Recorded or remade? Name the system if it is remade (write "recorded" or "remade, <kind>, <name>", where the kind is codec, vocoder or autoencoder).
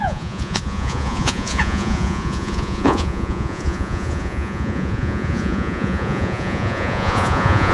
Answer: remade, vocoder, Vocos